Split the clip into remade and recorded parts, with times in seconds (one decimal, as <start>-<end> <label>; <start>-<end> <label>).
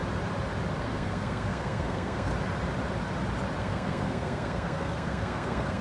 0.0-0.8 recorded; 0.8-2.3 remade; 2.3-3.6 recorded; 3.6-5.8 remade